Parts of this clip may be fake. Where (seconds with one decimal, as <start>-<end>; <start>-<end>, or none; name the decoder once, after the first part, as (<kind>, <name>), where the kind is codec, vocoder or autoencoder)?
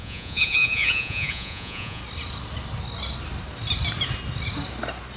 0.0-2.0 (vocoder, Vocos)